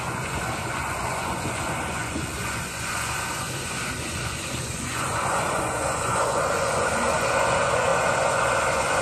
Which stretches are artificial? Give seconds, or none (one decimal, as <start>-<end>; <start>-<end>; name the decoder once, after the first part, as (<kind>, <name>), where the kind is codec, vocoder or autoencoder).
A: 0.0-9.0 (vocoder, Vocos)